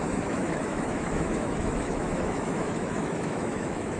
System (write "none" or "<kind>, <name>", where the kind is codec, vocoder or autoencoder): autoencoder, DAC-VAE